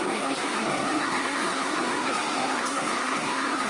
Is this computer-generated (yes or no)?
yes